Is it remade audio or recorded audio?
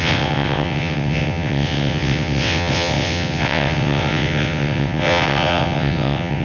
remade